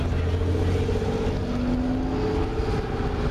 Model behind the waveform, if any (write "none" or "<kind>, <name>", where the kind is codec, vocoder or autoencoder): none